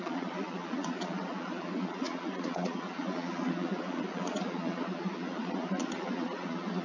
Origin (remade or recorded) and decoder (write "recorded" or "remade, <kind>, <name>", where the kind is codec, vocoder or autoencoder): remade, vocoder, Vocos